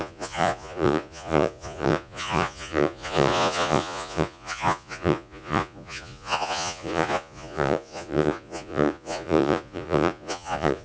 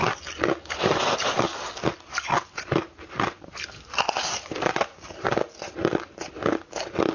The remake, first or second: first